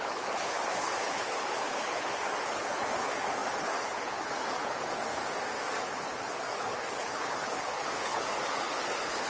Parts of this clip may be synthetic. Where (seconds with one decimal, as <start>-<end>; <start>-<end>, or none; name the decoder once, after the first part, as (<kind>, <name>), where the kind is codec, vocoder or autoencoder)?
0.0-5.2 (codec, HILCodec); 5.8-9.3